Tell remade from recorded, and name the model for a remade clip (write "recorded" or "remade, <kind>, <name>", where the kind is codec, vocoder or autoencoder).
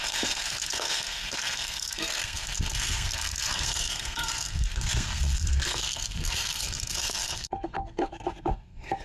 remade, codec, SNAC